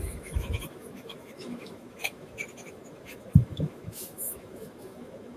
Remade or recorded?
remade